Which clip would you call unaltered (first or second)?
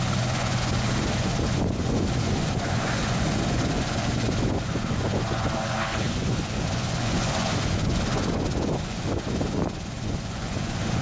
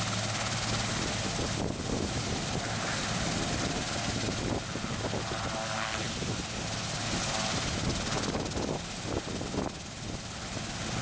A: second